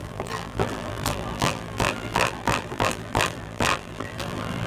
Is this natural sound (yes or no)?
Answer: no